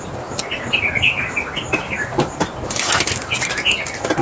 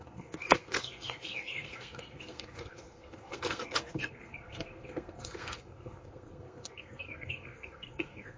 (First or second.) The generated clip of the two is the second